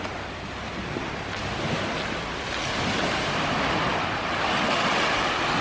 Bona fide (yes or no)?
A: yes